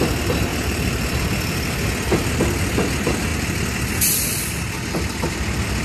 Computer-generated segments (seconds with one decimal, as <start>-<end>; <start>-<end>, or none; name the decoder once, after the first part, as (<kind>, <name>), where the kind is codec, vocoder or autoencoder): 0.5-1.9 (vocoder, BigVGAN v2)